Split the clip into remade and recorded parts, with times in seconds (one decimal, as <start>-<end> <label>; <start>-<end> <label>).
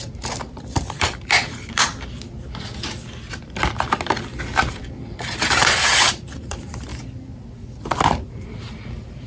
0.0-1.9 remade; 1.9-4.7 recorded; 4.7-6.9 remade; 6.9-8.3 recorded; 8.3-9.3 remade